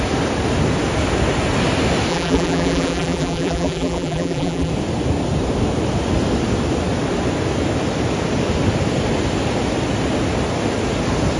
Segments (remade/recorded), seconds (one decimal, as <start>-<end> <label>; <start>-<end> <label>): 0.0-2.1 recorded; 2.1-4.7 remade; 4.7-11.4 recorded